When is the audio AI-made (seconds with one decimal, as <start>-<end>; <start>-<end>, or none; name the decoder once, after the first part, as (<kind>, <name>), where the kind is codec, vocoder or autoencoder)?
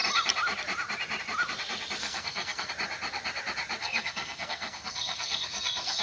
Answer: 2.0-2.7 (codec, SNAC); 3.8-6.0